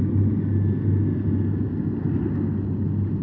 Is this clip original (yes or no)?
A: yes